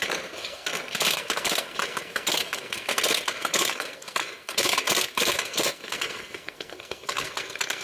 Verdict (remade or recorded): remade